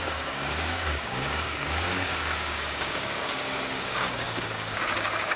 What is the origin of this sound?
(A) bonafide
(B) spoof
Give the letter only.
B